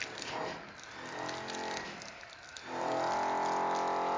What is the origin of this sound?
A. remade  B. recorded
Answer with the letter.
B